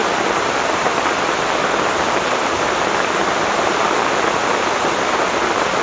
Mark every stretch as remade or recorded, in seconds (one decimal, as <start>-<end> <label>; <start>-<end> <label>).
0.0-5.8 recorded